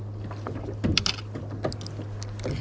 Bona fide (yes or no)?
yes